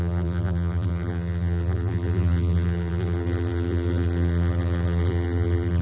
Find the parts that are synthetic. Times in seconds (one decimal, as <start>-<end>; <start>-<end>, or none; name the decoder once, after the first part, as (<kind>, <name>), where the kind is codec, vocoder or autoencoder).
0.0-5.8 (vocoder, BigVGAN v2)